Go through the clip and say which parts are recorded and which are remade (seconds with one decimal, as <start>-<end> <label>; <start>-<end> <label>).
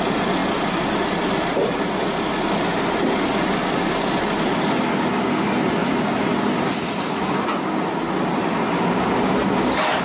0.0-10.0 recorded